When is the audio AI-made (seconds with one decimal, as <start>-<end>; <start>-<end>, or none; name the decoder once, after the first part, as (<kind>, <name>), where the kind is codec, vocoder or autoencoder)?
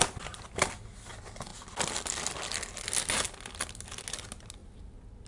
none